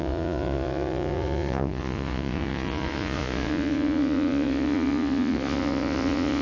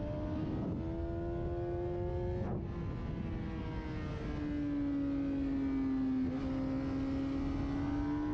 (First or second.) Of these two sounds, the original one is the second